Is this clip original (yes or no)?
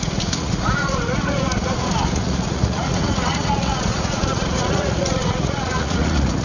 no